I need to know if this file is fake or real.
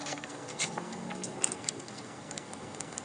fake